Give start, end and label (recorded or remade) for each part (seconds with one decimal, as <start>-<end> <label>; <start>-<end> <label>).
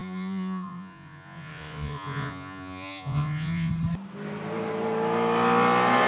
0.0-3.7 remade; 3.7-6.1 recorded